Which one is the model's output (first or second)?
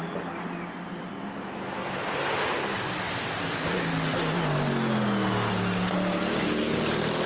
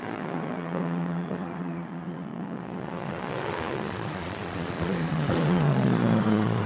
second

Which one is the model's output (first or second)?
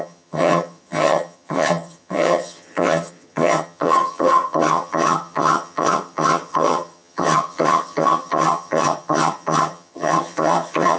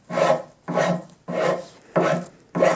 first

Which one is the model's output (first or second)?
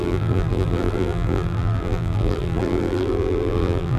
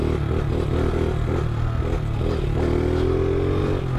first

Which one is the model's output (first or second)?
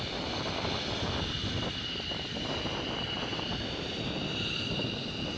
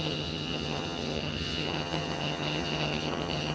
second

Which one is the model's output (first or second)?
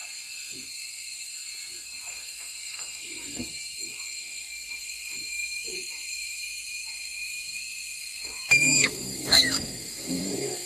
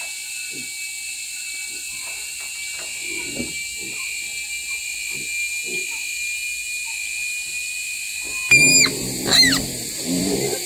first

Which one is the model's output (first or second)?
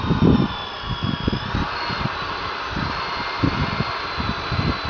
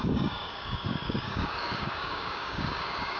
second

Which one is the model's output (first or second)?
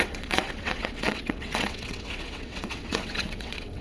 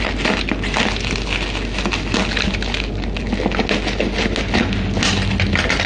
first